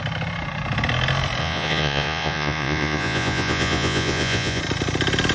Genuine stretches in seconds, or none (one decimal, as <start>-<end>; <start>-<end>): 0.0-1.4; 4.6-5.3